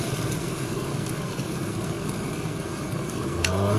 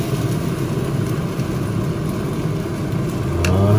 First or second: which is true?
second